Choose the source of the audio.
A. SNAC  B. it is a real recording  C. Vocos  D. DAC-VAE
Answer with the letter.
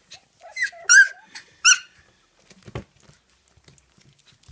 B